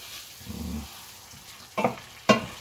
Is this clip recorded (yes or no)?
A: yes